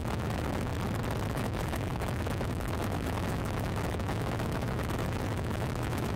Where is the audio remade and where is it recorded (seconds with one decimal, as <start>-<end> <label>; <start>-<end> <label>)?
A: 0.0-0.7 remade; 0.7-1.3 recorded; 1.3-6.2 remade